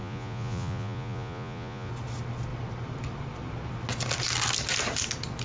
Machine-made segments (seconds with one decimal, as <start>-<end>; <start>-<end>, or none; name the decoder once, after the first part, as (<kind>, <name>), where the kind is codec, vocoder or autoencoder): 0.0-1.9 (vocoder, Vocos)